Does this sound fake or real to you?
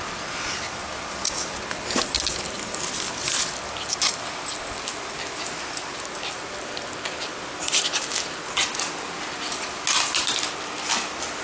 real